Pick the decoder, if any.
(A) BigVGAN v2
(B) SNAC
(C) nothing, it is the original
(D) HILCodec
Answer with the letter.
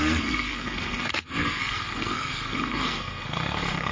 B